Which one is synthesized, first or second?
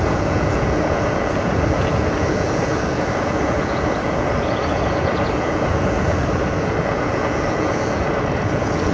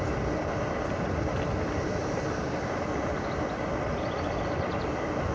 first